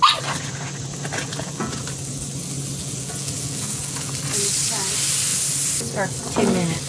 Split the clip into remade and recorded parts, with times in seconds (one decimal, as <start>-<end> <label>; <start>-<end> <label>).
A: 0.0-1.2 recorded; 1.2-1.8 remade; 1.8-2.8 recorded; 2.8-4.1 remade; 4.1-6.9 recorded